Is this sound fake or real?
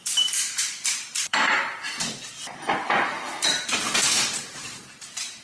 fake